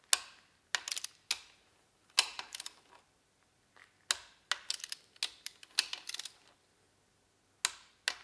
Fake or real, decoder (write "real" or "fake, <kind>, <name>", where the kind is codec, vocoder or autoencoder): real